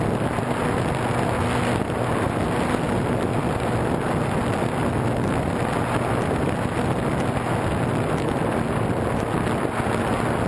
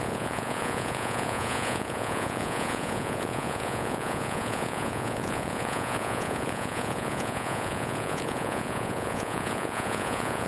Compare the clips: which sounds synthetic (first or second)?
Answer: second